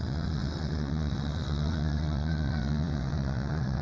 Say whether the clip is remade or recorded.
remade